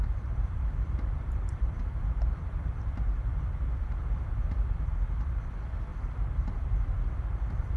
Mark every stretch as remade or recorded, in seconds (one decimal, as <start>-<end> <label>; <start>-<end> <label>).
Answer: 0.0-5.9 remade; 5.9-7.8 recorded